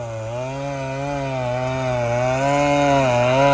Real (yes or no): yes